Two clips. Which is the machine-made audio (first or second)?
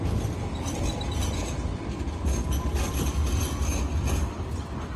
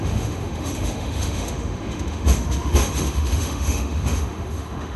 second